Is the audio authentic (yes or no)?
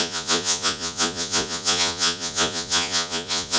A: no